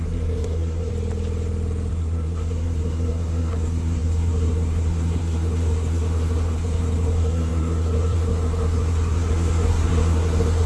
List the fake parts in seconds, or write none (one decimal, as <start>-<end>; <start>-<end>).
0.0-0.9; 1.9-10.7